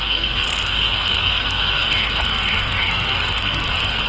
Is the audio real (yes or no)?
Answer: no